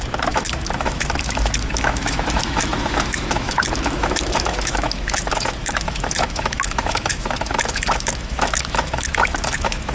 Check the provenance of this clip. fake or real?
fake